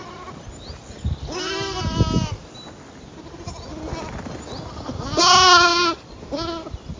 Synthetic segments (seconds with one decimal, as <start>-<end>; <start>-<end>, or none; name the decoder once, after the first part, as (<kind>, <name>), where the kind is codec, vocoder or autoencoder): none